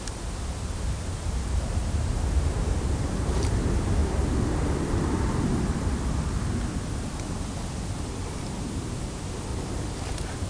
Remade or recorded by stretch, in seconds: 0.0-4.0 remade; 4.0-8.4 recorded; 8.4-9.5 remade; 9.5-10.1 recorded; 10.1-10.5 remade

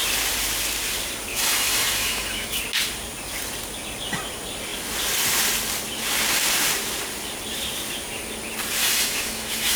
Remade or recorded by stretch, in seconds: 0.0-1.3 recorded; 1.3-2.6 remade; 2.6-8.8 recorded; 8.8-9.8 remade

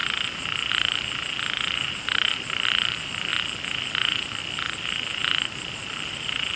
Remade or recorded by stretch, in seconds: 0.0-6.6 recorded

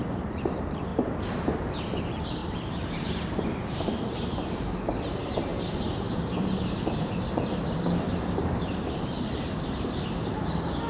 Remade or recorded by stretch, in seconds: 0.0-10.9 remade

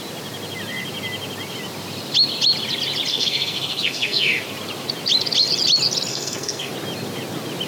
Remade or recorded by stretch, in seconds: 0.0-3.1 recorded; 3.1-4.4 remade; 4.4-6.1 recorded; 6.1-6.7 remade; 6.7-7.7 recorded

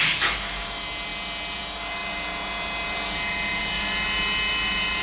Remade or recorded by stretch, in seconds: 0.0-5.0 recorded

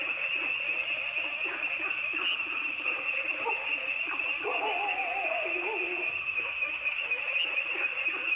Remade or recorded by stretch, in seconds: 0.0-6.2 recorded; 6.2-7.2 remade; 7.2-8.4 recorded